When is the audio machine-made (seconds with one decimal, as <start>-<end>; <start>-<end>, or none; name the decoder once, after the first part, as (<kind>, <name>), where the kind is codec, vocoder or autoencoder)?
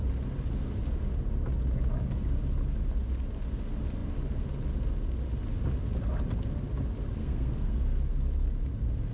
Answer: 7.2-8.0 (codec, SNAC)